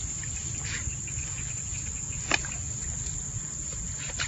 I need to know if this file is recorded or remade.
recorded